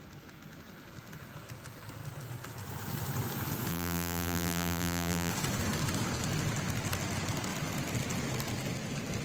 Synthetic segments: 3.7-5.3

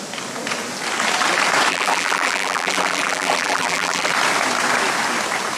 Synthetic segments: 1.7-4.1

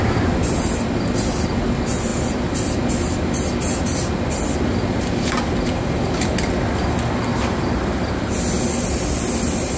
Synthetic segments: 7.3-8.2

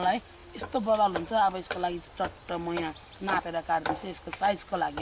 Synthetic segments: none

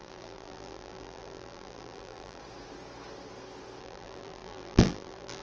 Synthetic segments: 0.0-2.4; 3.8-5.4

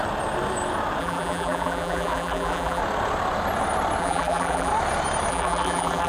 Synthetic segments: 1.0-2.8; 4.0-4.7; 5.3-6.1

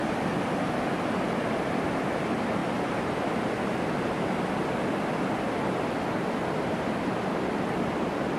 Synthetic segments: 2.6-3.1